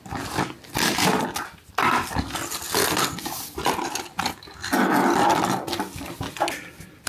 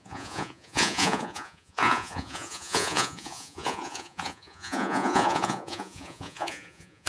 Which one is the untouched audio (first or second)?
first